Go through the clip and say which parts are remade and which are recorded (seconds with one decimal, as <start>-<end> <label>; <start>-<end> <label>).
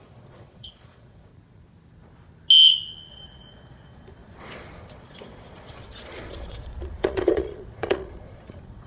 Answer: 0.0-1.3 remade; 1.3-3.1 recorded; 3.1-8.9 remade